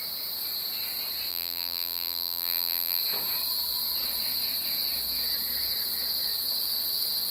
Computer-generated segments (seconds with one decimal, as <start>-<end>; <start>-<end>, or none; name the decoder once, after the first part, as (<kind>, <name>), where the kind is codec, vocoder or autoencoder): 1.3-3.0 (vocoder, BigVGAN v2)